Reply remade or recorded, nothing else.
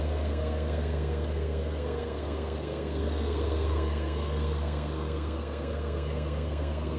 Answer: remade